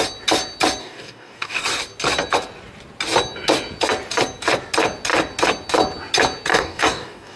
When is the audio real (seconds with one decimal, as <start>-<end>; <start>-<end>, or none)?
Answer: 0.0-0.8; 1.6-6.5